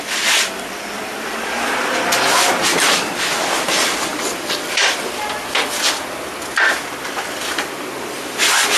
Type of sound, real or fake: real